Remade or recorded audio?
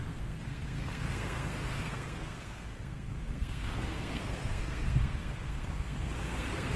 remade